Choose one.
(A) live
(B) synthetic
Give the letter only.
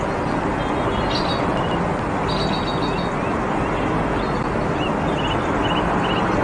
A